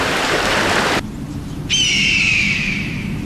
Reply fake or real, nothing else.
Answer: fake